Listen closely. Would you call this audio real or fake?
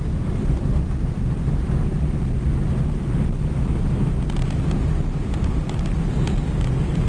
real